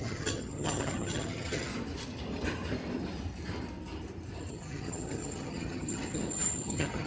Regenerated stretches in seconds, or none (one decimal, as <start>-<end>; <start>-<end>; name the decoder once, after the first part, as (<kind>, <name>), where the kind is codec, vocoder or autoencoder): 0.0-1.7 (vocoder, HiFi-GAN); 4.5-7.1

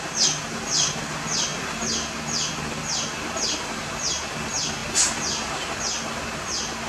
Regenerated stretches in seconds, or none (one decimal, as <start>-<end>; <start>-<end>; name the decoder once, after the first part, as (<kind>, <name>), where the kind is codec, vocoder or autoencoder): none

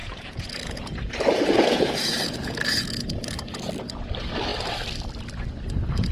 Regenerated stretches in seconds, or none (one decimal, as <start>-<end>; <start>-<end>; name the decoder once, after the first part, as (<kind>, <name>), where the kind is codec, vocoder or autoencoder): 0.0-3.7 (vocoder, Vocos)

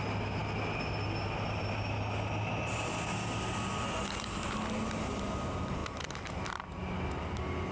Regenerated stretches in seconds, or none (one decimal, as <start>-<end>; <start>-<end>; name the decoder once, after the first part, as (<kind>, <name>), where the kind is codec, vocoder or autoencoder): none